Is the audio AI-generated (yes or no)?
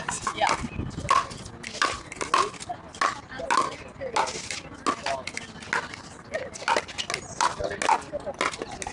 no